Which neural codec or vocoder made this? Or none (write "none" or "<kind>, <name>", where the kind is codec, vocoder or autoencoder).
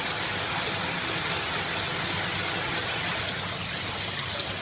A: none